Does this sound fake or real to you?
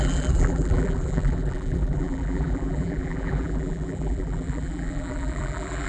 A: fake